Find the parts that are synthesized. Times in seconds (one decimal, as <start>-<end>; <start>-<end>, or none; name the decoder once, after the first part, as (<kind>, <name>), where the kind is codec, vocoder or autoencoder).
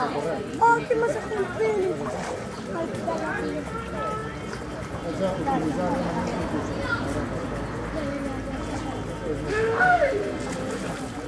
none